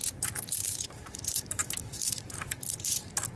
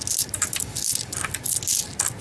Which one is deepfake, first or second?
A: first